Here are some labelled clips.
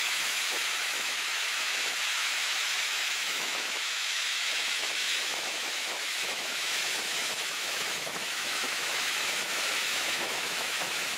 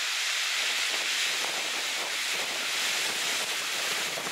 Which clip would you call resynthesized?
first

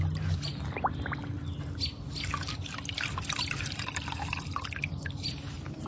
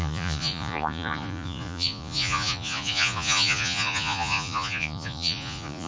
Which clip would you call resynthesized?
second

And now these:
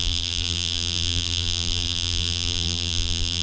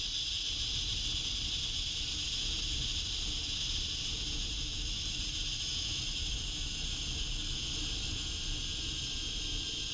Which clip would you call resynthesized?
first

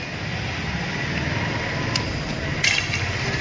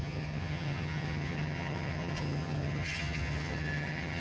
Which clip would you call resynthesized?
second